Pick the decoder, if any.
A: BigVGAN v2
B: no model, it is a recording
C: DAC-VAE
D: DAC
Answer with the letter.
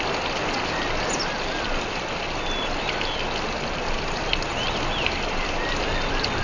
B